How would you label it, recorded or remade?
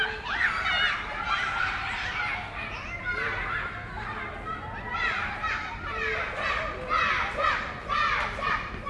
recorded